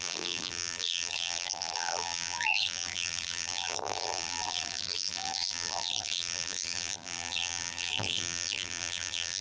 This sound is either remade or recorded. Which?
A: remade